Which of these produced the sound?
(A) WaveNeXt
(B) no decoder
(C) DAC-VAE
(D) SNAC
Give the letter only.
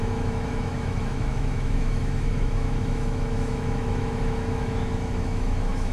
C